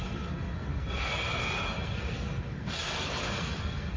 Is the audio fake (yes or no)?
yes